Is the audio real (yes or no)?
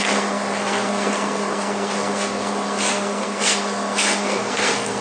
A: no